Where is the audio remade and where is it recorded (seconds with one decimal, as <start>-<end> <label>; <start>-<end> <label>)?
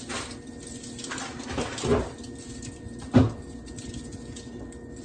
0.0-5.0 recorded